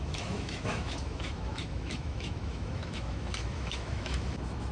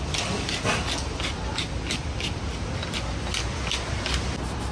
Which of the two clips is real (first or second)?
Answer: second